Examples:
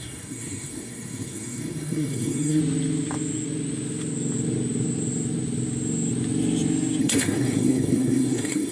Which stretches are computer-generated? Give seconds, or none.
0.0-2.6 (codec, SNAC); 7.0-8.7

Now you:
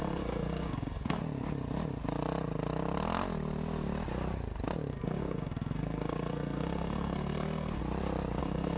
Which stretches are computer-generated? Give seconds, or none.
0.0-1.2 (codec, SNAC); 4.9-7.8; 8.4-8.8